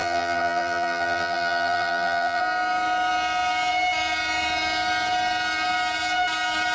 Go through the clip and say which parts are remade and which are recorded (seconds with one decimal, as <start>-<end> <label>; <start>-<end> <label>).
0.0-2.4 remade; 2.4-6.7 recorded